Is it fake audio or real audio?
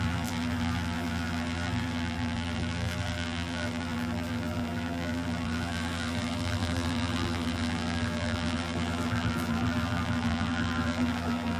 fake